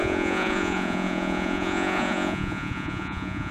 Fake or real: fake